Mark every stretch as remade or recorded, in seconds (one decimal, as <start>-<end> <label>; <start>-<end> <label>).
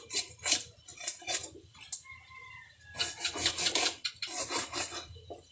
0.0-5.5 recorded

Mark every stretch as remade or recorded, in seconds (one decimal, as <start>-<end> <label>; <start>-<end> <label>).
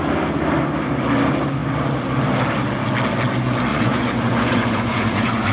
0.0-3.7 recorded; 3.7-5.5 remade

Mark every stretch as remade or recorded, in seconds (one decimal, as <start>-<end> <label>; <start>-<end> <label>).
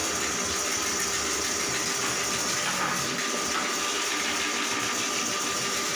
0.0-6.0 recorded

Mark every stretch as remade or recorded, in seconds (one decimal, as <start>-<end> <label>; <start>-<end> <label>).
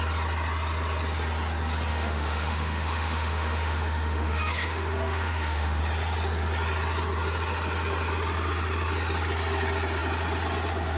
0.0-1.9 recorded; 1.9-5.8 remade; 5.8-11.0 recorded